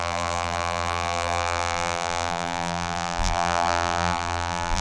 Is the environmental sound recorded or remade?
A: remade